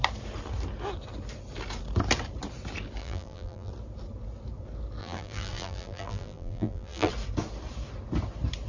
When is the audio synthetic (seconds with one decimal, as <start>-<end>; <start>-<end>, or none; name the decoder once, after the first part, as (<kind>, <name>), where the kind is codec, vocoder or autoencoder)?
3.0-3.7 (vocoder, BigVGAN v2); 5.0-7.1